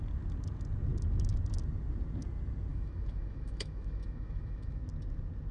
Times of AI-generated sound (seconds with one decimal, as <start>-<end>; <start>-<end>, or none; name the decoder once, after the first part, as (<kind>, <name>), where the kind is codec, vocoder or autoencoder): 2.7-4.8 (autoencoder, DAC-VAE)